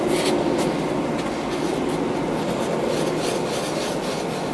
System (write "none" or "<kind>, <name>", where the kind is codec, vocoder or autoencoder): none